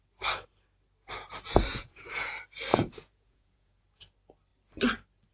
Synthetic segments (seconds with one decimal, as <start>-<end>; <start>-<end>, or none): 1.7-2.3; 2.7-3.8